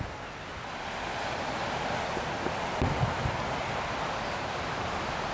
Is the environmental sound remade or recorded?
recorded